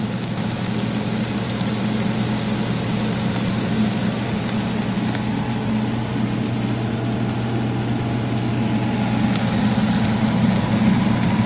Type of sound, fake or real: real